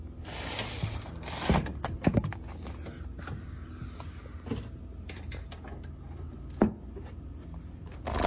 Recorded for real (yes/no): yes